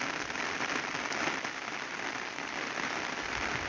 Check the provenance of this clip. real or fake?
real